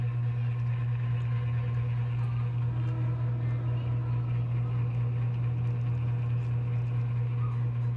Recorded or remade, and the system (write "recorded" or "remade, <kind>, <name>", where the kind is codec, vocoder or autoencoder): recorded